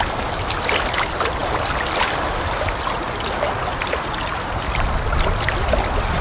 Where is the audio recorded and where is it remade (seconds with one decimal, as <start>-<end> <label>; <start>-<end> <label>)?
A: 0.0-6.2 recorded